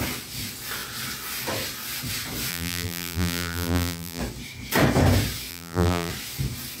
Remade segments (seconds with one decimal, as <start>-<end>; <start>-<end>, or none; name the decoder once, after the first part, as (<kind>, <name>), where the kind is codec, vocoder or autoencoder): 2.5-4.2 (vocoder, BigVGAN v2); 5.5-6.1